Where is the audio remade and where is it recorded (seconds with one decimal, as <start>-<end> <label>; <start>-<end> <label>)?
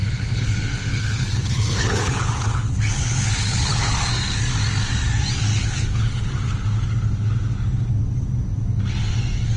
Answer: 0.0-4.1 remade; 4.1-5.5 recorded; 5.5-6.3 remade; 6.3-9.6 recorded